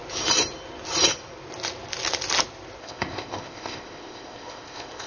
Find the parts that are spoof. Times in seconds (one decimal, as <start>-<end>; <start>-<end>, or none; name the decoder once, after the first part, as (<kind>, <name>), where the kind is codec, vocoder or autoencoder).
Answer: 2.8-5.1 (codec, ZipCodec)